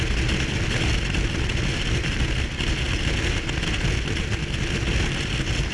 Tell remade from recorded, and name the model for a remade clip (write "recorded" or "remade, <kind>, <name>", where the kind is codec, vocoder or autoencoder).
recorded